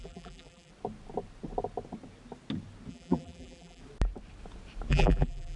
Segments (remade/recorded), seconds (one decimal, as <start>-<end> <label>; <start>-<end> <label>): 0.0-0.7 remade; 0.7-2.9 recorded; 2.9-3.8 remade; 3.8-4.9 recorded; 4.9-5.6 remade